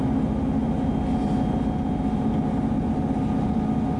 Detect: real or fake real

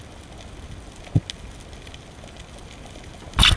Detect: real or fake real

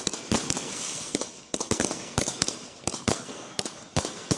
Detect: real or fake fake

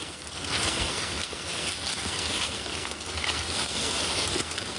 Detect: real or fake fake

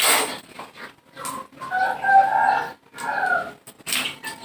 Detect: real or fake real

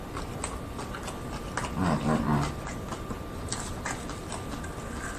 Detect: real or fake real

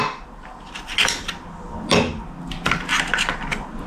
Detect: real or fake real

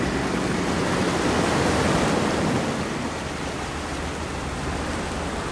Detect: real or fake real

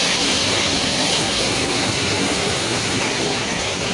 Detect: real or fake fake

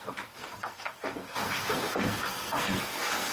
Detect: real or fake fake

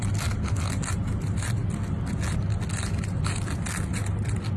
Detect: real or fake real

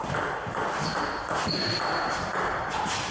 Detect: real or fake real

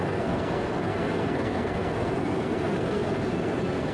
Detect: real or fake fake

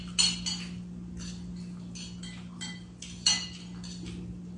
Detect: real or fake real